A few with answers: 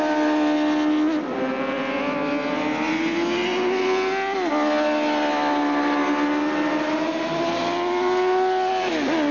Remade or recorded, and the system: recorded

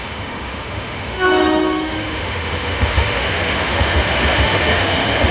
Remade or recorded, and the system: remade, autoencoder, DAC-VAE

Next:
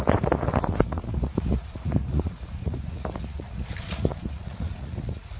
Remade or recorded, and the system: remade, vocoder, Vocos